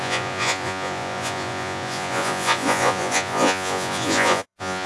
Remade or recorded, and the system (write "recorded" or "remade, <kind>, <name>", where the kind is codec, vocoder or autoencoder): remade, vocoder, Vocos